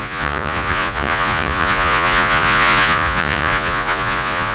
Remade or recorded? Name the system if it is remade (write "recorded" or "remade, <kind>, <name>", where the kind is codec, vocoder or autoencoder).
remade, vocoder, Vocos